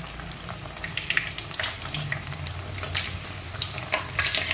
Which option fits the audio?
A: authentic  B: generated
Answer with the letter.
A